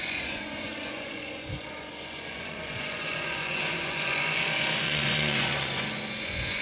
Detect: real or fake fake